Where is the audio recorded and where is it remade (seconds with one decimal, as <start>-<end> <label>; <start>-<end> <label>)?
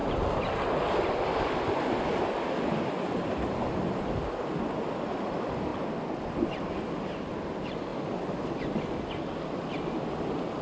0.0-0.6 remade; 0.6-10.6 recorded